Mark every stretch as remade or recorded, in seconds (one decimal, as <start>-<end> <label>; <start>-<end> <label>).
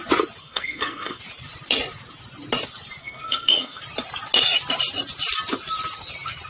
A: 0.0-0.4 recorded; 0.4-1.2 remade; 1.2-3.0 recorded; 3.0-3.8 remade; 3.8-6.5 recorded